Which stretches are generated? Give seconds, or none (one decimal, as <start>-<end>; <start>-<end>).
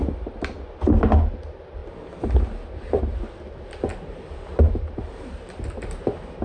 none